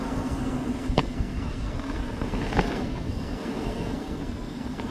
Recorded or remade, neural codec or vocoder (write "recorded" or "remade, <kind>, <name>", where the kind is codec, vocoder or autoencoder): remade, codec, SNAC